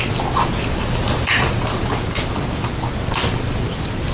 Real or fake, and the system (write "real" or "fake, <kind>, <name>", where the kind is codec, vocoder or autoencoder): real